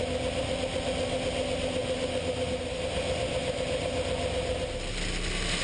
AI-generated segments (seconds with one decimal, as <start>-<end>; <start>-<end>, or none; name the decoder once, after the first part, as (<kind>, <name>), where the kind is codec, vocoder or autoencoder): none